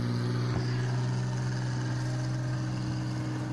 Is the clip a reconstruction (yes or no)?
no